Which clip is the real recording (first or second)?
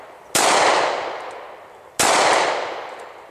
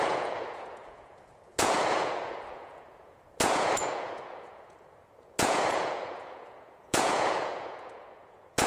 first